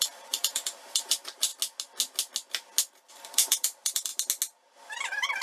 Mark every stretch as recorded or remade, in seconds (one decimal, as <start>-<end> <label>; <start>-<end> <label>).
0.0-1.5 remade; 1.5-3.1 recorded; 3.1-4.1 remade; 4.1-5.4 recorded